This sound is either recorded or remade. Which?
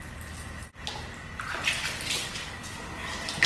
recorded